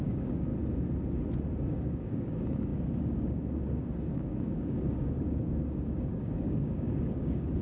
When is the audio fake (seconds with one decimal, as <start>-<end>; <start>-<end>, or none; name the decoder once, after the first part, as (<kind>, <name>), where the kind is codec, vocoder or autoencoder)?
0.0-0.5 (codec, DAC); 1.7-7.6